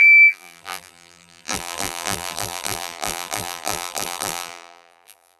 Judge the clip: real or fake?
fake